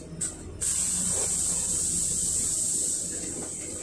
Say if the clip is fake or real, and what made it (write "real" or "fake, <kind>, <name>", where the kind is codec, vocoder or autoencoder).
real